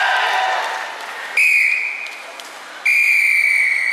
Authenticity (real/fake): real